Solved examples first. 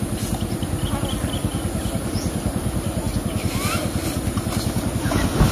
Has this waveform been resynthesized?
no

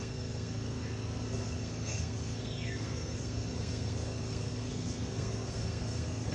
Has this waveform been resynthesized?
yes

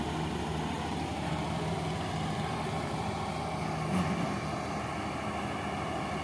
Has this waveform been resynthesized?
no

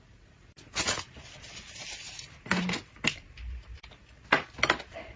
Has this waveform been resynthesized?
no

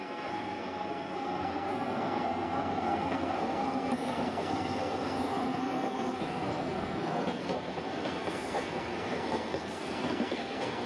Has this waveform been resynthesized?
yes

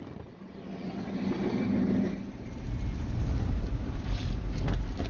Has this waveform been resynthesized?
no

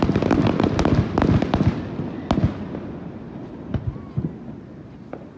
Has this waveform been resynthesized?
no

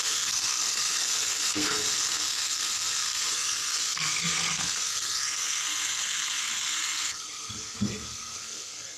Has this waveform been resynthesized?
yes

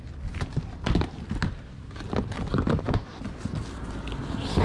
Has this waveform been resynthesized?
no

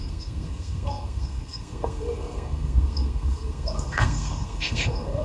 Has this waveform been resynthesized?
yes